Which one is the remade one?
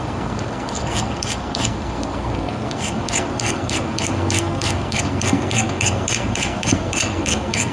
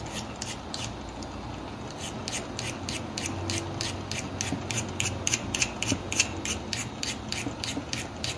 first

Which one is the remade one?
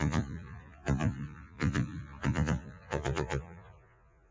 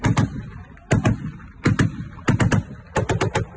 first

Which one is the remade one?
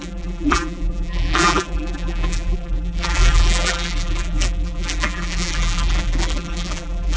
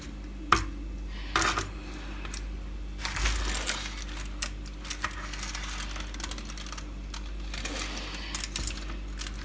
first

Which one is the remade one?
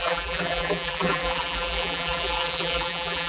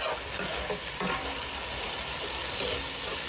first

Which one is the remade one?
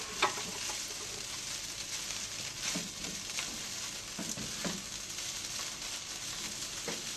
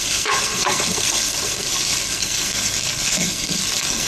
second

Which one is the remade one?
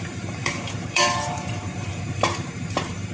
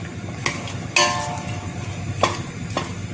first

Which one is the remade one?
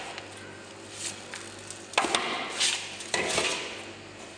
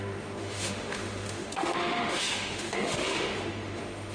second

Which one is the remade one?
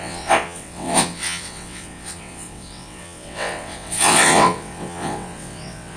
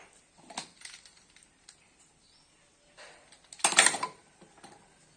first